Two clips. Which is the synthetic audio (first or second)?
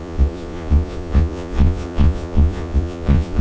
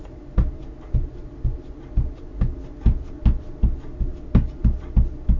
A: first